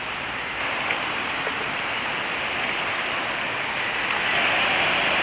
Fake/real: real